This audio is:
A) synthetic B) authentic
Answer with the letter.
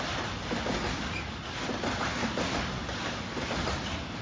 B